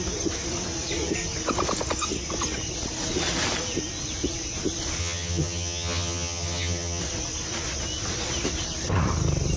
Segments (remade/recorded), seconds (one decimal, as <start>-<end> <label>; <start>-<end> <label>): 0.0-5.0 recorded; 5.0-7.0 remade; 7.0-9.6 recorded